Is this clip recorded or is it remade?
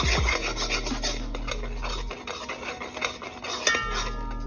recorded